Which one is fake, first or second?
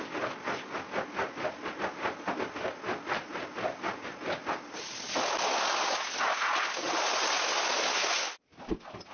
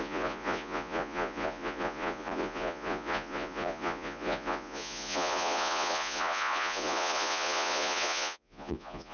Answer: second